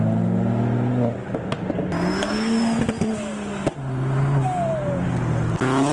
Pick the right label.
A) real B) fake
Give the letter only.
A